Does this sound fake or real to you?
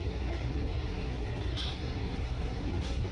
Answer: fake